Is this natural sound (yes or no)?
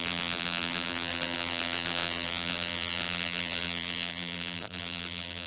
no